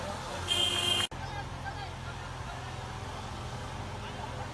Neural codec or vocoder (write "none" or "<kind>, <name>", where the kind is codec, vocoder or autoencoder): none